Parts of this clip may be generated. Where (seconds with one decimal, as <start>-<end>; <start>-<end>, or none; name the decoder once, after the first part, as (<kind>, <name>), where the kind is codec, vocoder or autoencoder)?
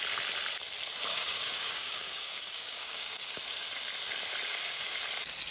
1.1-3.4 (codec, DAC); 4.5-5.0